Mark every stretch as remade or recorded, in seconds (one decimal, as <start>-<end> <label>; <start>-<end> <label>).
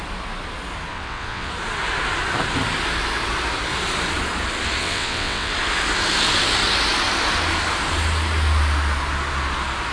0.0-0.9 recorded; 0.9-1.5 remade; 1.5-4.8 recorded; 4.8-5.5 remade; 5.5-9.9 recorded